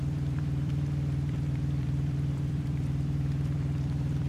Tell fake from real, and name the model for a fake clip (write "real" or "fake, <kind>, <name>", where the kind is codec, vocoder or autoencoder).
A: fake, vocoder, BigVGAN v2